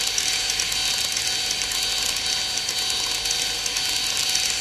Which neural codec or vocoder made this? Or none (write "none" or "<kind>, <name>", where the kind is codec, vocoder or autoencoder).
none